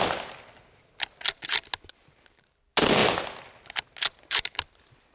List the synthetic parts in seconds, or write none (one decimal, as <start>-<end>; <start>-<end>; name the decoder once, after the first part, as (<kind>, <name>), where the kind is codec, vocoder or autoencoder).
none